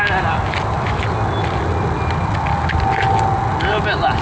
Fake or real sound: real